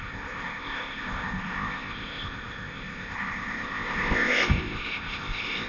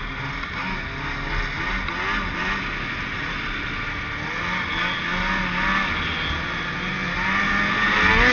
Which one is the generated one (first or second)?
first